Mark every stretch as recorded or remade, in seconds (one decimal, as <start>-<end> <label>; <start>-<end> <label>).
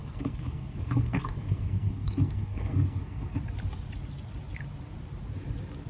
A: 0.0-3.4 remade; 3.4-5.9 recorded